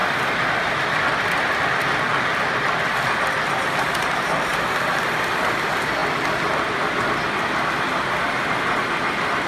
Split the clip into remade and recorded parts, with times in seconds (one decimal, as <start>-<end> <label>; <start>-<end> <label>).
0.0-9.5 recorded

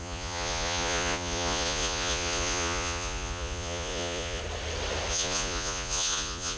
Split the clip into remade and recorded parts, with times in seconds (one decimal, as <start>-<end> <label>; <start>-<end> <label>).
0.0-4.4 remade; 4.4-5.1 recorded; 5.1-6.6 remade

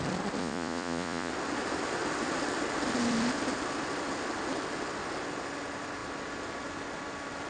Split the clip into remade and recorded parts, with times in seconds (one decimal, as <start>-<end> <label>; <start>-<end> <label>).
0.0-0.4 recorded; 0.4-1.3 remade; 1.3-7.5 recorded

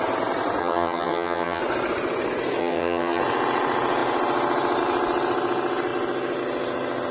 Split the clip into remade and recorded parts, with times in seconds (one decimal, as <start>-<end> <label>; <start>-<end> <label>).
0.0-0.6 recorded; 0.6-1.6 remade; 1.6-2.6 recorded; 2.6-3.2 remade; 3.2-7.1 recorded

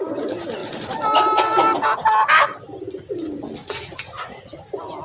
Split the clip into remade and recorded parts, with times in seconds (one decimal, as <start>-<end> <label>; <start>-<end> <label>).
0.0-3.6 recorded; 3.6-4.6 remade; 4.6-5.0 recorded